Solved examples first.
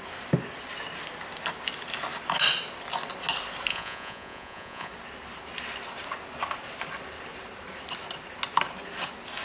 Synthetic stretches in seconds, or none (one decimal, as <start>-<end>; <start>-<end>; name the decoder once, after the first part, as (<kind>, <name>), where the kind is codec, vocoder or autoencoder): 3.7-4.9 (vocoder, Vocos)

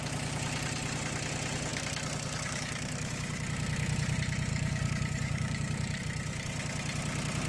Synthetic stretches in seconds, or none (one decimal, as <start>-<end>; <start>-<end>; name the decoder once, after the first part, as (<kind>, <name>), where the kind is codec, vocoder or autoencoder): 1.7-3.1 (codec, DAC); 4.5-6.0

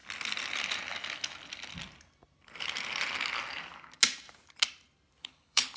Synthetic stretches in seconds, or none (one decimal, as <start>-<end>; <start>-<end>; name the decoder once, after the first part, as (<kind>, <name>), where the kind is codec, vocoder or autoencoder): 5.2-5.8 (codec, HILCodec)

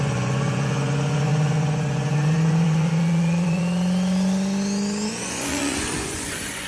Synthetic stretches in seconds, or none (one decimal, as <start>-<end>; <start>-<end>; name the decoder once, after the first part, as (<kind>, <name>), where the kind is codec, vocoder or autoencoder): 0.0-3.6 (vocoder, Vocos); 5.2-6.7